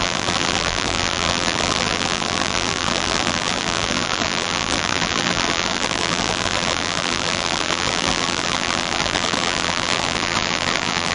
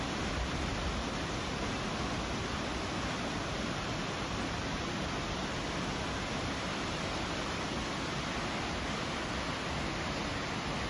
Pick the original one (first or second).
second